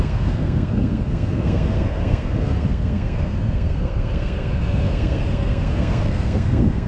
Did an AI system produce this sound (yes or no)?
yes